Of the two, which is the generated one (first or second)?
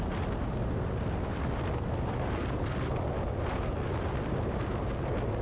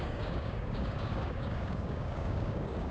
second